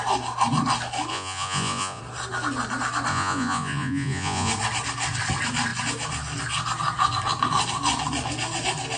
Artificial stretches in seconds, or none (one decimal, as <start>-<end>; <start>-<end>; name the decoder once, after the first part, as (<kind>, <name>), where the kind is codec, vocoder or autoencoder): 1.1-2.0 (vocoder, Vocos); 3.1-4.5